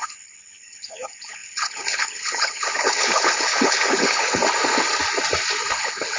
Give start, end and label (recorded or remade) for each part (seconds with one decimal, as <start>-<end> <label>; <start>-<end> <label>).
0.0-4.4 remade; 4.4-5.7 recorded; 5.7-6.2 remade